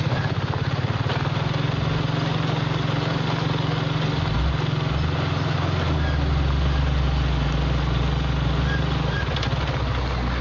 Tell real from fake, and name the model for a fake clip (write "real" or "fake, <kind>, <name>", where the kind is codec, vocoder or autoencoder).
real